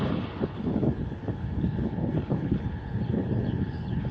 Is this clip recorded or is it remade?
remade